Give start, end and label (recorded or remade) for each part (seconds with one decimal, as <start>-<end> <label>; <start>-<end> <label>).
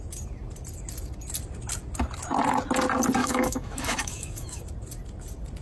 0.0-3.2 recorded; 3.2-4.6 remade; 4.6-5.6 recorded